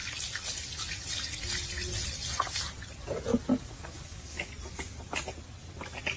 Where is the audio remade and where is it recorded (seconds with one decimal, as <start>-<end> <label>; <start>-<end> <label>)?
0.0-3.5 recorded; 3.5-4.5 remade; 4.5-6.2 recorded